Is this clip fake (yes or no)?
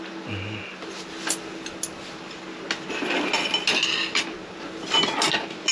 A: no